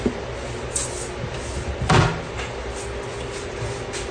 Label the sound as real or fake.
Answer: real